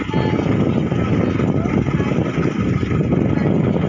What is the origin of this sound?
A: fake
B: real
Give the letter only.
B